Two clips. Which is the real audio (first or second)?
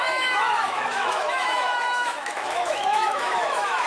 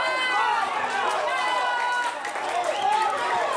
second